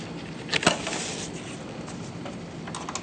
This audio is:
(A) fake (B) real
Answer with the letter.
B